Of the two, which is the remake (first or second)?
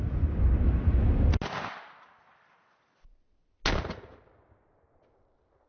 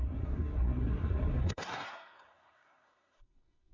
second